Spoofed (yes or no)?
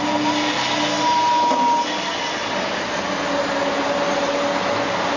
no